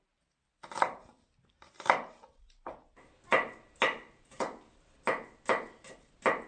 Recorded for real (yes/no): yes